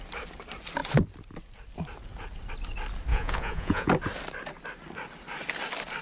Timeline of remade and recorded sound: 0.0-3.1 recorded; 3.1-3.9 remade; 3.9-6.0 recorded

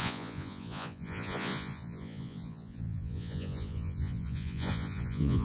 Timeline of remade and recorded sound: 0.0-5.4 remade